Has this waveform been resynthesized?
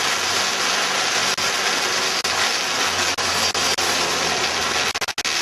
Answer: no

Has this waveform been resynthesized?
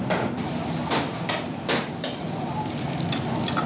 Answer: yes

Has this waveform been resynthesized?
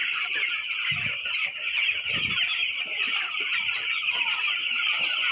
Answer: no